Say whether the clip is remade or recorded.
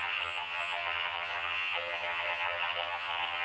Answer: remade